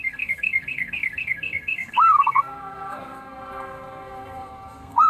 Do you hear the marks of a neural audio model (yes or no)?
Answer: yes